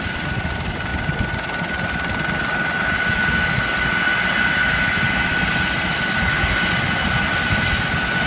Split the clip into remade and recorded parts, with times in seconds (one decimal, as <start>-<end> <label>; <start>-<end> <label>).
0.0-8.3 recorded